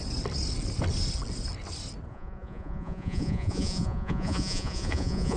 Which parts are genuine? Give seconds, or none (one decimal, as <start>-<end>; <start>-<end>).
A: 0.0-2.1

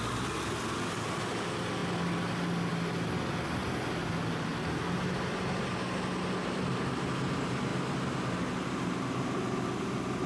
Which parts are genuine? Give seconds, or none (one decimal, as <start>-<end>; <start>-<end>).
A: 0.0-10.3

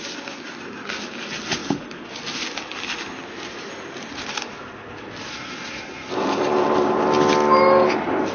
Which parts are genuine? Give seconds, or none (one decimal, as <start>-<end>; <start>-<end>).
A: 0.0-5.3; 6.1-8.3

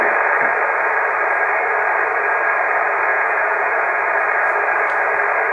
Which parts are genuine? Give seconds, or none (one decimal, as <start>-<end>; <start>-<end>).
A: 0.0-3.1; 4.0-5.5

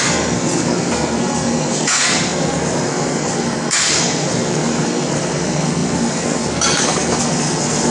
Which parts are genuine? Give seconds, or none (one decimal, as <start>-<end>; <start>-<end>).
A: none

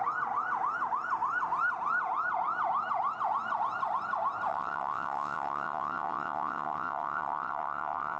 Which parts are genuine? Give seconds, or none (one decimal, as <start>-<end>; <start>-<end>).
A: 0.0-4.5